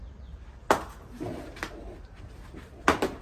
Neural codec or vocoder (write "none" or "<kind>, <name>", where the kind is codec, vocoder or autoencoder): none